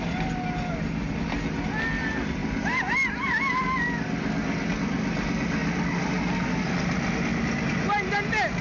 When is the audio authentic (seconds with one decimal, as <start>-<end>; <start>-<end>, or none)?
0.0-8.6